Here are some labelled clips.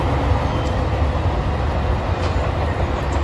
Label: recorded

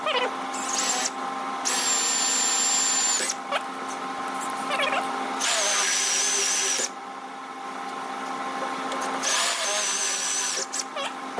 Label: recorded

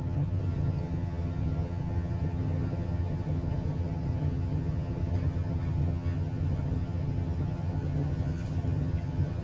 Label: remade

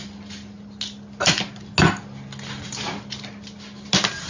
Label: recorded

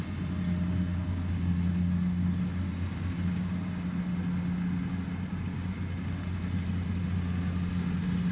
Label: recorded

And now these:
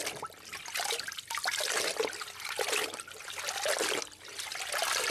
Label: recorded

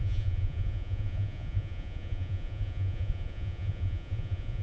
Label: remade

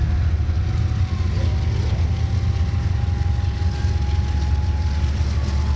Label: recorded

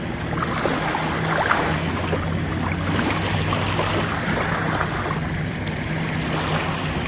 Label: recorded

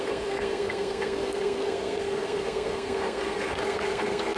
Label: remade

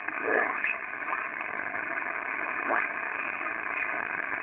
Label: remade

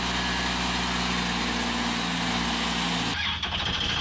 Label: recorded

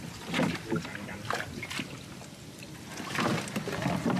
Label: recorded